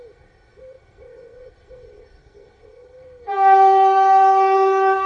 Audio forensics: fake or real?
fake